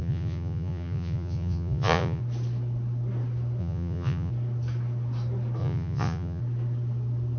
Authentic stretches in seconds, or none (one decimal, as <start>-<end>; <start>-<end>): 2.2-3.6; 4.3-5.6; 6.4-7.4